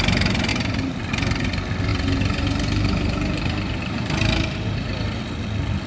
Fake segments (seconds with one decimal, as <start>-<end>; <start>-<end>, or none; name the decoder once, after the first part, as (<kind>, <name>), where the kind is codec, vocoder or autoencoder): 0.5-1.0 (vocoder, BigVGAN v2); 1.9-5.2